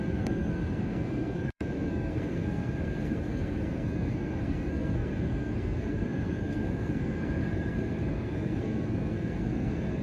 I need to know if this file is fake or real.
fake